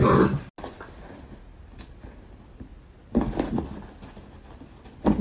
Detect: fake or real real